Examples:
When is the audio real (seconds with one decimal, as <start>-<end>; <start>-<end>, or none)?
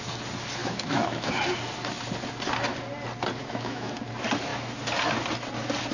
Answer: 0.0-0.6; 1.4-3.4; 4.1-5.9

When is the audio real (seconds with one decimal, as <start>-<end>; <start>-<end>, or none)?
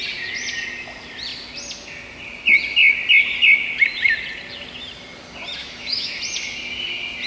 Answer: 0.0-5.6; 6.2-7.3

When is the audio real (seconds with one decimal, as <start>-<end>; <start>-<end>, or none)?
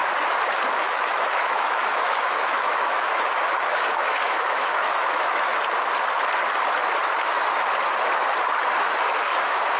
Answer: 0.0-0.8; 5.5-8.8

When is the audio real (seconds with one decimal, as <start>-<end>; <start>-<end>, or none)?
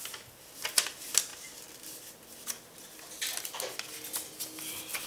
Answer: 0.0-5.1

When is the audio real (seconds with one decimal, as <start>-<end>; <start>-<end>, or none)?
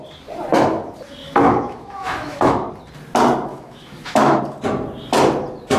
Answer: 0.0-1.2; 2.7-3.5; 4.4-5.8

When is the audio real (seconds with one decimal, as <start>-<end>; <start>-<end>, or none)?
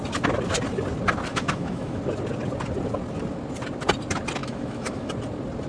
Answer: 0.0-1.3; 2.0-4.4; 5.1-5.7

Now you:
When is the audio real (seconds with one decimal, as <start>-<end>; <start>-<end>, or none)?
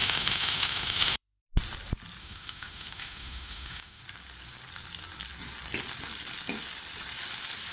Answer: 1.4-2.2; 4.0-7.7